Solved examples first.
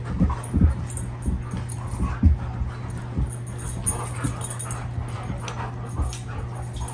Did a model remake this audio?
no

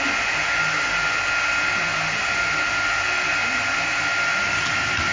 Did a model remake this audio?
no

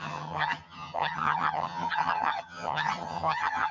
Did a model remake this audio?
yes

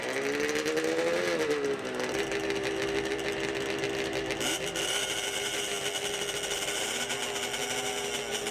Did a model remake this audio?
no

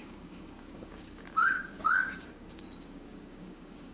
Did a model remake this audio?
yes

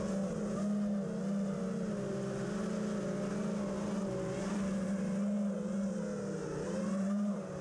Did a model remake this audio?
no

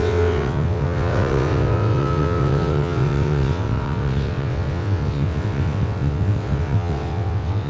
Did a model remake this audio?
yes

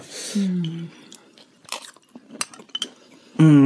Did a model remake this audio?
no